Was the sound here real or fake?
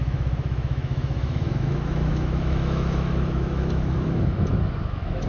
fake